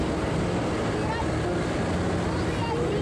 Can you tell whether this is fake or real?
real